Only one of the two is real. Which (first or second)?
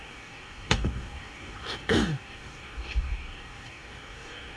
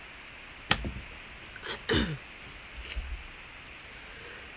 second